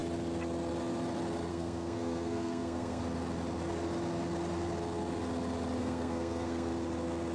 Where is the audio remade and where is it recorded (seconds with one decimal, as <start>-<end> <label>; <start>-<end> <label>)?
0.0-1.5 recorded; 1.5-3.0 remade; 3.0-5.8 recorded; 5.8-6.7 remade; 6.7-7.3 recorded